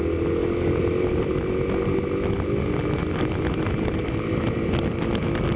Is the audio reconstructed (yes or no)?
no